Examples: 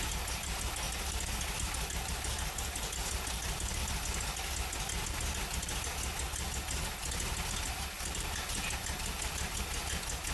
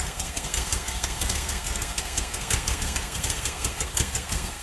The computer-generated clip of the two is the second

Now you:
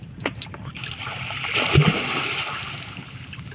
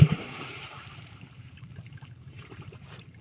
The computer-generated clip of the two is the second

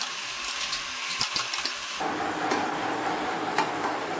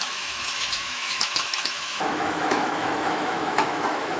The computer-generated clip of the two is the second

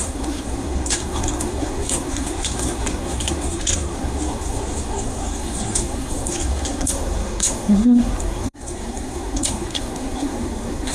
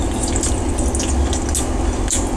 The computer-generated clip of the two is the first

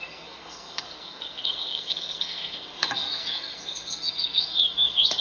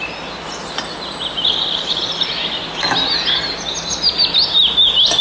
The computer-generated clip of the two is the first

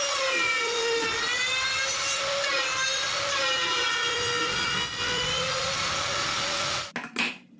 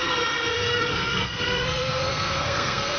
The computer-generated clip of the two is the second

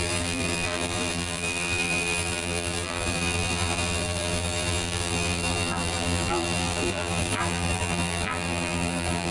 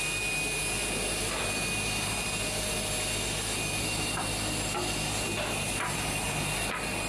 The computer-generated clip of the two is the first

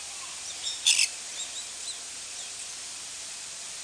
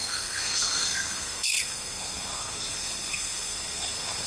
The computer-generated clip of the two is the second